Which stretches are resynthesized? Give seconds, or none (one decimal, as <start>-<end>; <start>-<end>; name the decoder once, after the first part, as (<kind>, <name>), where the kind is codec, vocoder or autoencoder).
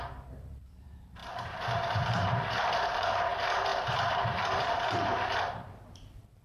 0.0-6.4 (vocoder, BigVGAN v2)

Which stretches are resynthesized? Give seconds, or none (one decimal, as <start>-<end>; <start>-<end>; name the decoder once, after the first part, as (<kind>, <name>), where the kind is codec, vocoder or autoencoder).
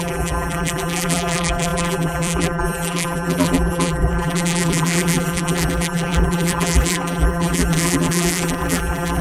0.0-9.2 (vocoder, BigVGAN v2)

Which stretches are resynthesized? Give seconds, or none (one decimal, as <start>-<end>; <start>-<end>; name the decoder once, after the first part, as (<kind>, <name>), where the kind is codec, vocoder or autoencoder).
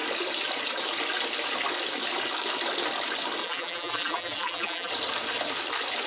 3.4-4.9 (vocoder, BigVGAN v2)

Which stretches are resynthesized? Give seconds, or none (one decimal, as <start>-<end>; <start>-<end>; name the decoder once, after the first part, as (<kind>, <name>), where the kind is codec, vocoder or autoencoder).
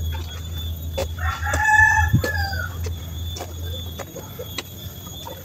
0.0-5.4 (vocoder, BigVGAN v2)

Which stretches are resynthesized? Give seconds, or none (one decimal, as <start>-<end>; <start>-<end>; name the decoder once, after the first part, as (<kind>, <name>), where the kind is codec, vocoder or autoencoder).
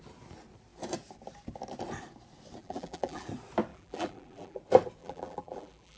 2.6-3.3 (vocoder, BigVGAN v2); 3.7-4.6; 5.0-6.0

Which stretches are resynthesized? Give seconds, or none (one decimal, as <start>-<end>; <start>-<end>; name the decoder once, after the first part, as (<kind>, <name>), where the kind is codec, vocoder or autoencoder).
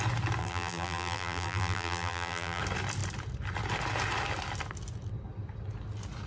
0.4-2.6 (vocoder, BigVGAN v2)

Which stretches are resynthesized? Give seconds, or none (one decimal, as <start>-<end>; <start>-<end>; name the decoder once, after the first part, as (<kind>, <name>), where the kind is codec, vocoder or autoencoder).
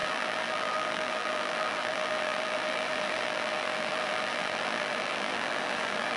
0.0-6.2 (vocoder, BigVGAN v2)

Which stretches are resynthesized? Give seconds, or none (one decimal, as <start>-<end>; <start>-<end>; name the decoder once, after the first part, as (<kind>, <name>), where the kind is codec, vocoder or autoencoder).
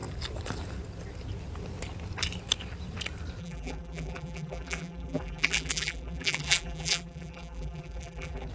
3.4-8.5 (vocoder, BigVGAN v2)